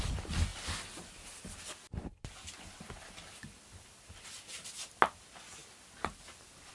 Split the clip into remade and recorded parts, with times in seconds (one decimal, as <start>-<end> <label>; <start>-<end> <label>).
0.0-5.6 recorded; 5.6-6.7 remade